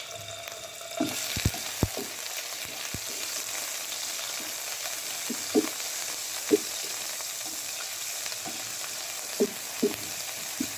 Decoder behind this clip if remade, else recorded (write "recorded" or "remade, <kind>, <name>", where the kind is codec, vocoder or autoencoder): recorded